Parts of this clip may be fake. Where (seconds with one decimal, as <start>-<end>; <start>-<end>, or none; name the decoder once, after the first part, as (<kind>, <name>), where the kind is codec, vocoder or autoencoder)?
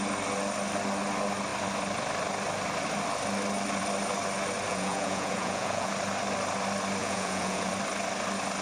4.7-5.9 (vocoder, Vocos); 7.0-7.7